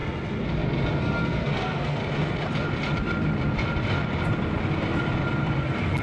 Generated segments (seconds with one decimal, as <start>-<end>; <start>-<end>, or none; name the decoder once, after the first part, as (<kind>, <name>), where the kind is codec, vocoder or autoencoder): 1.0-2.0 (codec, SNAC); 5.6-6.0